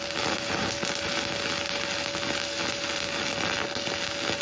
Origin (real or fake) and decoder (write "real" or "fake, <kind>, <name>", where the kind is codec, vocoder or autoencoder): real